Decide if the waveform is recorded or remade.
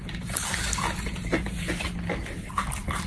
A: recorded